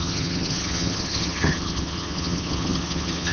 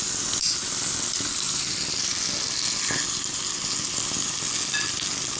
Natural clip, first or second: second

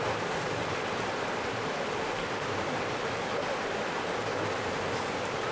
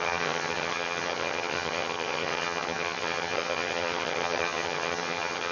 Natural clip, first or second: first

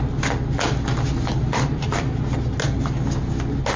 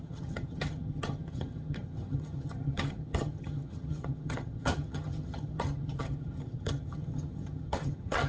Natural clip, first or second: first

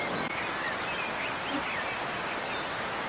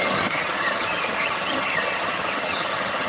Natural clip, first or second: first